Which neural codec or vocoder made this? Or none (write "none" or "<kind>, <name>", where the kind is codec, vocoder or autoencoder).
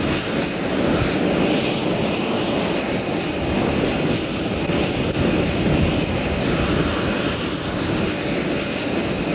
none